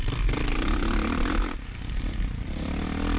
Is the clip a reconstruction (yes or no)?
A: yes